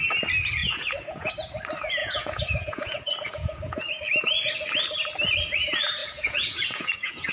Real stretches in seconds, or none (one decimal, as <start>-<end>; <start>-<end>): 0.0-0.6; 1.3-2.0; 3.9-6.0